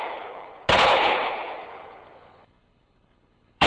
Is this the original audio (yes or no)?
no